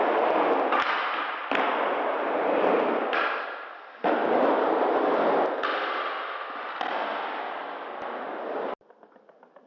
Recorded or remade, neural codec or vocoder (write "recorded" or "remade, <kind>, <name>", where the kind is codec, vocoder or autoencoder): recorded